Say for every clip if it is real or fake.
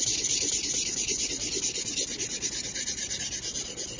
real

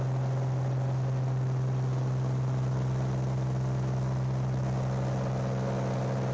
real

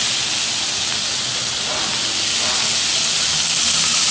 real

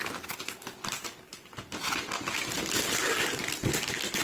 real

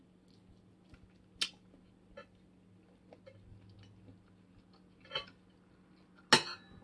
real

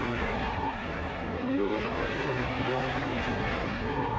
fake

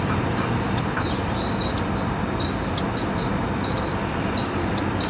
real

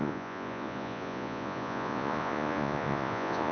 fake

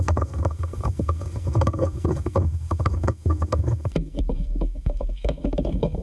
fake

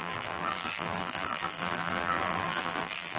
fake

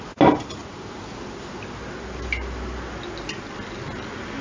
real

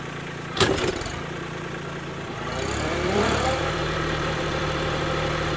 fake